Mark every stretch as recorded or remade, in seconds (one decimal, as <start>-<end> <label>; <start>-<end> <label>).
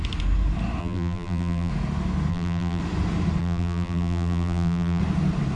0.0-0.8 recorded; 0.8-1.7 remade; 1.7-2.3 recorded; 2.3-2.8 remade; 2.8-3.4 recorded; 3.4-5.0 remade; 5.0-5.6 recorded